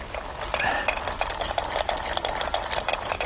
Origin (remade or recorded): recorded